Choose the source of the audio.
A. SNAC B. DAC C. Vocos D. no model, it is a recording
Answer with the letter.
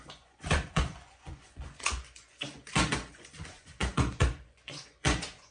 C